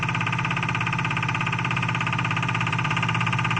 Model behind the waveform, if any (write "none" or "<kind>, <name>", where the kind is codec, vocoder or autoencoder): vocoder, BigVGAN v2